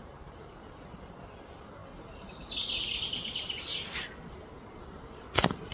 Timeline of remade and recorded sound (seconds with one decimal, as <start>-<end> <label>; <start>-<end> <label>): 0.0-5.7 recorded